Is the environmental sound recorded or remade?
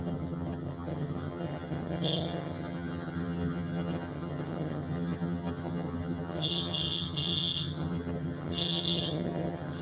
remade